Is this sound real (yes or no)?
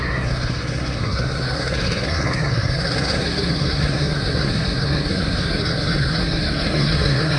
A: no